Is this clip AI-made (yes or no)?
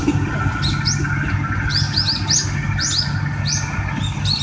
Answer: no